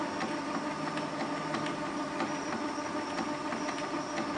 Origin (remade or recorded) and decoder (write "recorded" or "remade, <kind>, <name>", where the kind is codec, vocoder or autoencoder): recorded